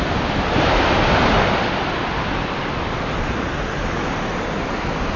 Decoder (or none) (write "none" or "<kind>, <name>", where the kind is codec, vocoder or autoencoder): none